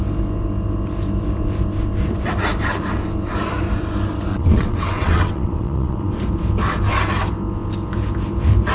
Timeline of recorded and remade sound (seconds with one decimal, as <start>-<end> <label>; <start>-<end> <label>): 0.0-4.3 recorded; 4.3-6.1 remade; 6.1-8.7 recorded